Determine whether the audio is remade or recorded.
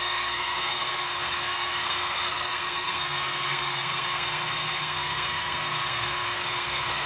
remade